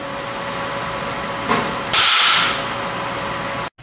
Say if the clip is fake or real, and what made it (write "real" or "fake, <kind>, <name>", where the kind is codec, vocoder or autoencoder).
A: real